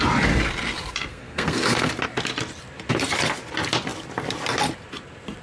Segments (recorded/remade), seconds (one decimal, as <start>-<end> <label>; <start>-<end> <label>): 0.0-1.1 recorded; 1.1-1.9 remade; 1.9-5.4 recorded